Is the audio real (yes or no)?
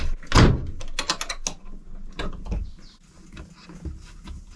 yes